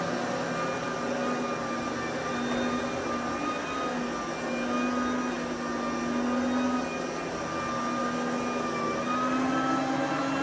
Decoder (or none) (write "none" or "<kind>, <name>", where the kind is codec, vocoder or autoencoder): none